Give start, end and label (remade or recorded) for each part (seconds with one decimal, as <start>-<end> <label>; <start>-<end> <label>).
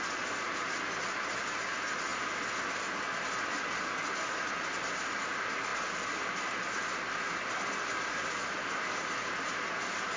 0.0-2.1 recorded; 2.1-4.0 remade; 4.0-5.7 recorded; 5.7-8.9 remade; 8.9-10.2 recorded